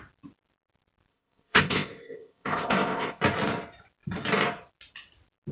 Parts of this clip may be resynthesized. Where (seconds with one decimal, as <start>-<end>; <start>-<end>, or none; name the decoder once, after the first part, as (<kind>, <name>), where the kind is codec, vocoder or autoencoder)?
1.1-3.2 (codec, ZipCodec)

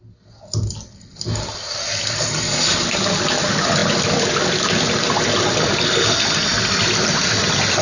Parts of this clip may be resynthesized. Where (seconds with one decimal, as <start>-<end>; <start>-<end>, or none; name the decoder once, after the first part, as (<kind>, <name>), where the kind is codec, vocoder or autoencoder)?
none

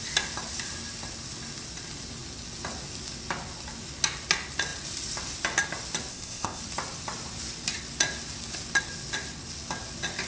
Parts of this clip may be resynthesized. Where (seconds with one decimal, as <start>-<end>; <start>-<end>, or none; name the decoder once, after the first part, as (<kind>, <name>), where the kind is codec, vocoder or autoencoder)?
6.1-6.6 (codec, ZipCodec)

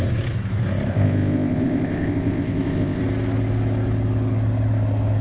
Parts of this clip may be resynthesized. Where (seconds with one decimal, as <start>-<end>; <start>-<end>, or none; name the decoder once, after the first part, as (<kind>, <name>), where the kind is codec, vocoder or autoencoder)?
0.9-3.0 (codec, ZipCodec)

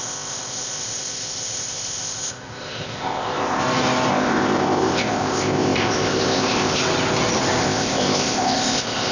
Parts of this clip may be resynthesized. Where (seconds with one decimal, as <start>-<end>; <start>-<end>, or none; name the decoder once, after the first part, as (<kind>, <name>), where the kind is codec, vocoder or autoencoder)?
0.0-3.6 (codec, ZipCodec); 4.1-6.8; 7.6-9.1

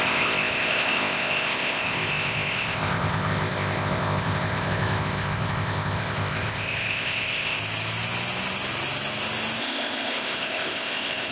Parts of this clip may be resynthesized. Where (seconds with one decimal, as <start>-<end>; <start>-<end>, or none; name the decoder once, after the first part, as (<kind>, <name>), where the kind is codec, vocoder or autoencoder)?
0.0-7.6 (codec, ZipCodec); 9.6-11.3